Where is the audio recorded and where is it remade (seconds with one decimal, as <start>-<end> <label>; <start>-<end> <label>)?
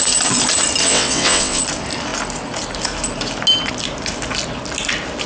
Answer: 0.0-0.8 recorded; 0.8-1.6 remade; 1.6-5.3 recorded